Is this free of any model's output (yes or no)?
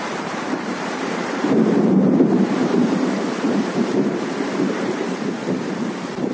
no